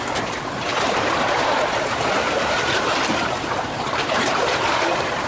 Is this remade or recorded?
remade